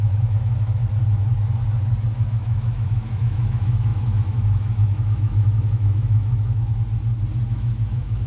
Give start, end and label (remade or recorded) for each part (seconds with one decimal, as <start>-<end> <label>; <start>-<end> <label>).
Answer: 0.0-0.8 remade; 0.8-2.1 recorded; 2.1-6.7 remade; 6.7-7.5 recorded; 7.5-8.3 remade